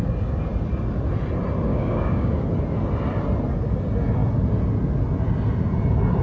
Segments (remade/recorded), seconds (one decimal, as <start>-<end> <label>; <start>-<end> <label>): 0.0-1.7 recorded; 1.7-2.3 remade; 2.3-6.2 recorded